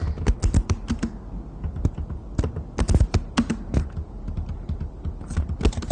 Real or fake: real